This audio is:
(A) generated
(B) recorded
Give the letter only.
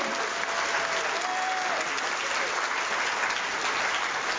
B